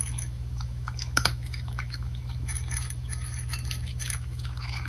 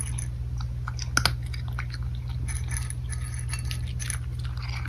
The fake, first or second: first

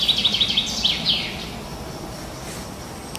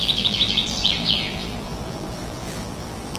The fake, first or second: second